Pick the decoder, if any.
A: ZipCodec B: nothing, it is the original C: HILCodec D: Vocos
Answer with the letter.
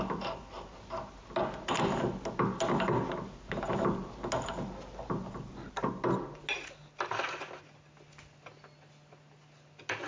B